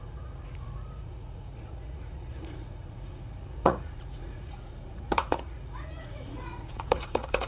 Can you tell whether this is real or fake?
fake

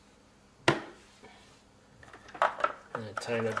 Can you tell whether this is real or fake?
real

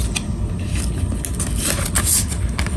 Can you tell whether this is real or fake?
real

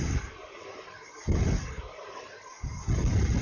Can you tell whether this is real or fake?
real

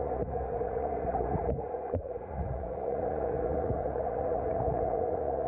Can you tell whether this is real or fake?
fake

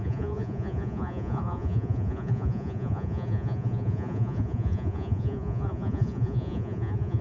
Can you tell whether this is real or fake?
fake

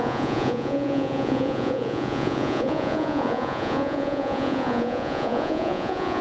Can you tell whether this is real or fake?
fake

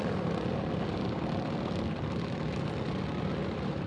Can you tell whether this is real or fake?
real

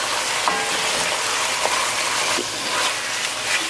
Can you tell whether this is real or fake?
real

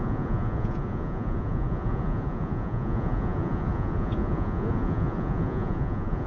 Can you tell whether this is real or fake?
fake